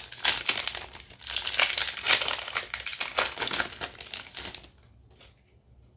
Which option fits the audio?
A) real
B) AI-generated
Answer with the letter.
A